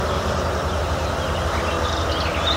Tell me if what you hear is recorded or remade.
recorded